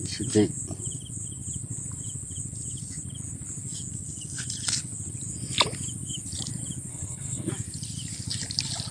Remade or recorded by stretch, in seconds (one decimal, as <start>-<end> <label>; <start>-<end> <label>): 0.0-6.9 recorded; 6.9-7.5 remade; 7.5-8.9 recorded